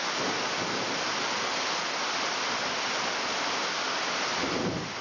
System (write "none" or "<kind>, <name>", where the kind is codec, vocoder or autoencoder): none